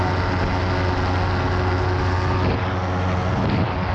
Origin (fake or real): real